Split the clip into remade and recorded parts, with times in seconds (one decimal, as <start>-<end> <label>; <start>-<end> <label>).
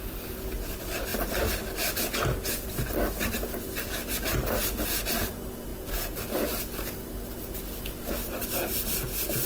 0.0-5.7 recorded; 5.7-6.2 remade; 6.2-9.5 recorded